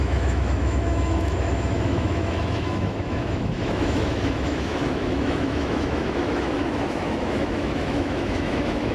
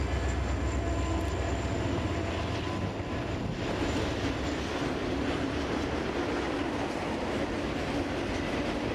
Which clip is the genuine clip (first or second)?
second